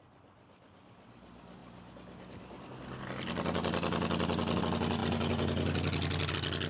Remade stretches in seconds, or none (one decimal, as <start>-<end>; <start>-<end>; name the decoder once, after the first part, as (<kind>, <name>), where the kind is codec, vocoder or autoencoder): none